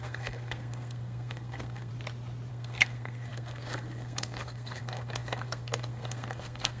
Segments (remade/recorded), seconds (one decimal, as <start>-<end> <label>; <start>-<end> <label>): 0.0-1.9 remade; 1.9-2.5 recorded; 2.5-6.8 remade